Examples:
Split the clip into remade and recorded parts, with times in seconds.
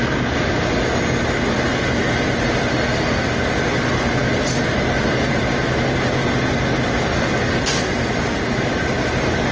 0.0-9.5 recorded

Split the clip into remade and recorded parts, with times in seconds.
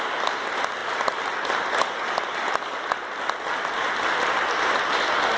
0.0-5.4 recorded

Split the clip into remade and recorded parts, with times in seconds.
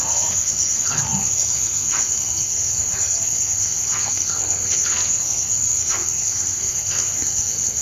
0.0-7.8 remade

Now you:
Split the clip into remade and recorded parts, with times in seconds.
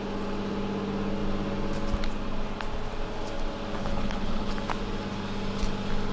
0.0-3.8 recorded; 3.8-4.5 remade; 4.5-6.1 recorded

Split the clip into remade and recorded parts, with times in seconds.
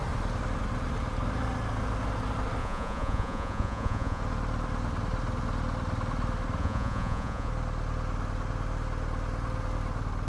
0.0-2.6 recorded; 2.6-4.2 remade; 4.2-6.6 recorded; 6.6-7.5 remade; 7.5-10.3 recorded